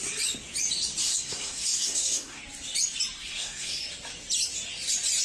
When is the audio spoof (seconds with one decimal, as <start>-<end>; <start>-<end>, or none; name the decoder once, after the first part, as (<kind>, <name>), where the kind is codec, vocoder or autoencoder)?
1.0-2.4 (codec, SNAC); 3.2-3.8